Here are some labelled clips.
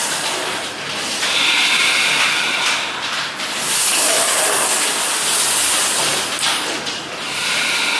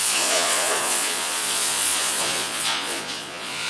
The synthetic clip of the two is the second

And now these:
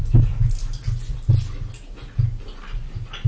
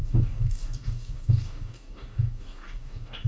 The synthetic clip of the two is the second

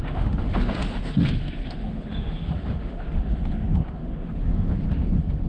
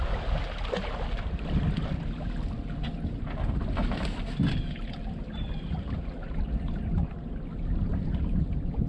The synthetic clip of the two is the first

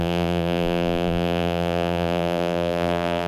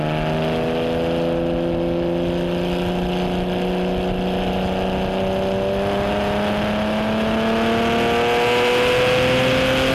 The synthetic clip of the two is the first